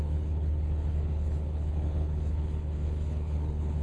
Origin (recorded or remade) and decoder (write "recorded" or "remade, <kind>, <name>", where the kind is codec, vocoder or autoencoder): remade, codec, HILCodec